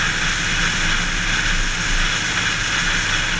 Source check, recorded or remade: recorded